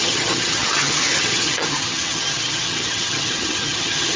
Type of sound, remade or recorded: remade